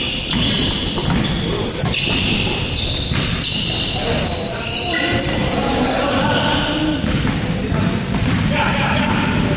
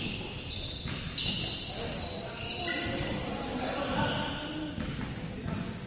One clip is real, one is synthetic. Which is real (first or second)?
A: second